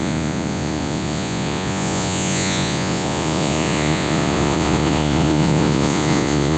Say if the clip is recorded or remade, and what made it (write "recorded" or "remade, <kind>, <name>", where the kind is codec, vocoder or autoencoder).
remade, vocoder, Vocos